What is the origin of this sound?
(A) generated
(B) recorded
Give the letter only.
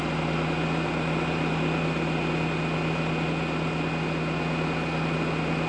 B